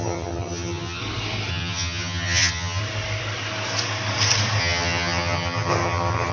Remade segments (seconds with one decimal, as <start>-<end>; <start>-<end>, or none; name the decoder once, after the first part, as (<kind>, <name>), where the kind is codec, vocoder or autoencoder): 0.0-1.0 (vocoder, HiFi-GAN); 1.5-2.8; 4.6-6.3